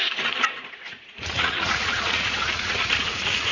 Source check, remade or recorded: remade